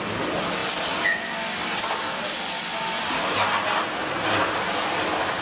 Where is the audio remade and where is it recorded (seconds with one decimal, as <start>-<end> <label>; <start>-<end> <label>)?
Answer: 0.0-5.4 recorded